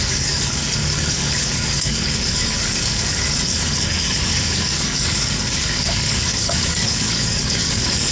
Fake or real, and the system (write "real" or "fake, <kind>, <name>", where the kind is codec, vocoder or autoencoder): fake, codec, DAC